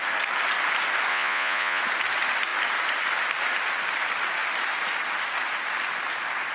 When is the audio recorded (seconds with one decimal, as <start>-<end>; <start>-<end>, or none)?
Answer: 0.0-1.1; 1.8-6.5